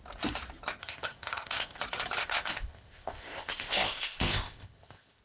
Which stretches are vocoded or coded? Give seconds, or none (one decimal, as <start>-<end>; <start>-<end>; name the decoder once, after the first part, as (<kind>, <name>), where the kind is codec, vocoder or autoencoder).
0.8-1.8 (codec, ZipCodec); 2.2-5.2